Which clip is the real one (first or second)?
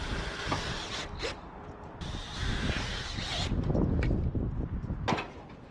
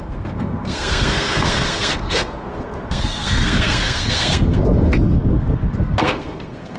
first